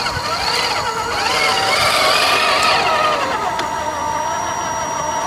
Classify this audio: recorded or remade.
recorded